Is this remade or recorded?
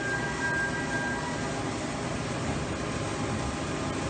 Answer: recorded